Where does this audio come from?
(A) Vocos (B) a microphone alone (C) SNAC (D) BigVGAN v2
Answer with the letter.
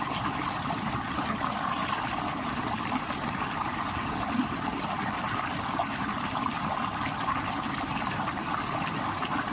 B